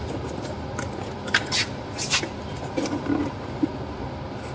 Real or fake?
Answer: real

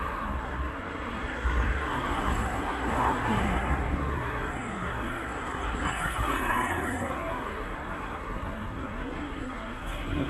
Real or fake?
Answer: fake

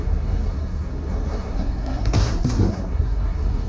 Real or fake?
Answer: fake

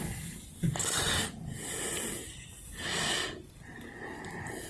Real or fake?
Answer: real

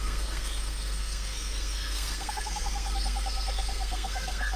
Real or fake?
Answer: fake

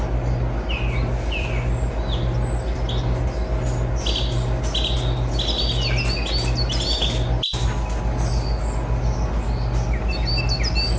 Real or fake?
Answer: real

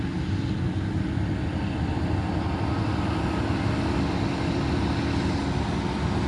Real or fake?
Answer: real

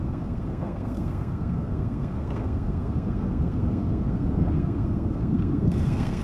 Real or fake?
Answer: fake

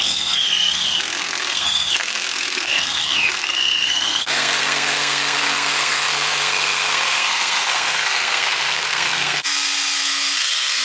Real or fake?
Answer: fake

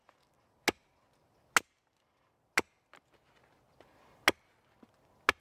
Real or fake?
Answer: real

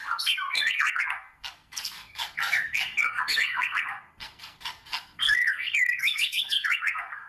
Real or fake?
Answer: fake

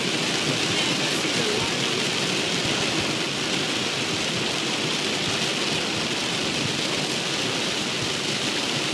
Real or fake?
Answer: real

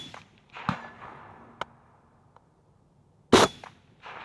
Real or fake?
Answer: real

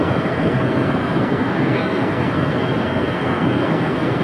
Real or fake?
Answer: fake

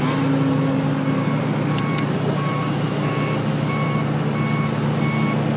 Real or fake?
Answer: real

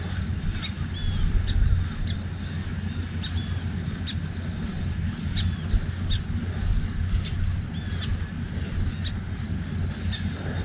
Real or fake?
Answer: real